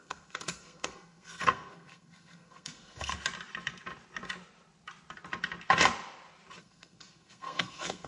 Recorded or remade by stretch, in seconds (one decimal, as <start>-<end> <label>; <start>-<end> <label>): 0.0-3.1 remade; 3.1-6.6 recorded; 6.6-8.1 remade